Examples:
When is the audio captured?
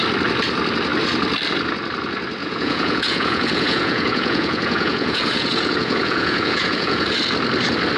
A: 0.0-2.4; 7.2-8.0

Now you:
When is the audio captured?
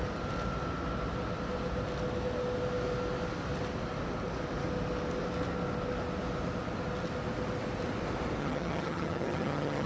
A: 0.0-8.4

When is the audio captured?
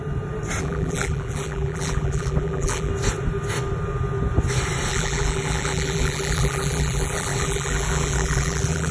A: 0.0-0.6; 2.9-4.9